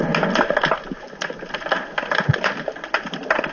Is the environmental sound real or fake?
real